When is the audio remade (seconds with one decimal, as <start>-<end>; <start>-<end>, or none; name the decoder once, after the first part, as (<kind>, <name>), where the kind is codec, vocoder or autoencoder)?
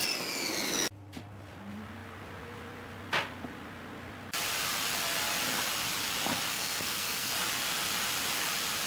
6.5-7.3 (codec, SNAC)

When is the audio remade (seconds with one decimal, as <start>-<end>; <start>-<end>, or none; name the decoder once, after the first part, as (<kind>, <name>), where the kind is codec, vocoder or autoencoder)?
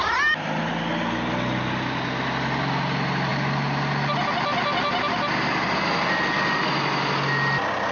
none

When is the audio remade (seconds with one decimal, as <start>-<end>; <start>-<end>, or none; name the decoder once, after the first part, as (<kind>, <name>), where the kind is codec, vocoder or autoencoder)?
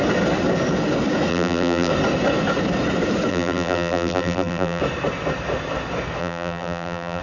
1.3-1.9 (vocoder, BigVGAN v2); 3.3-4.8; 6.2-7.2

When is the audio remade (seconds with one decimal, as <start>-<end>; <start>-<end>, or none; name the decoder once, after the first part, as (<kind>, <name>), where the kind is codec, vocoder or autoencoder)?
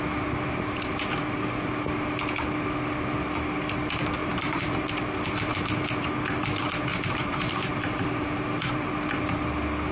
4.2-4.8 (vocoder, BigVGAN v2); 5.5-6.1; 6.9-8.9